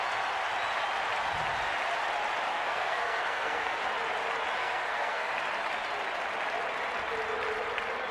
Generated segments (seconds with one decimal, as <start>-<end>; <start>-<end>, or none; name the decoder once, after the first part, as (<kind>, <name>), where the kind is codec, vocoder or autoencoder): 2.5-3.8 (codec, SNAC); 4.6-5.3